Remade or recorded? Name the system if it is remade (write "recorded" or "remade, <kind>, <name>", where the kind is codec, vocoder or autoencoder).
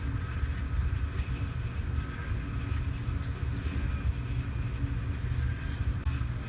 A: recorded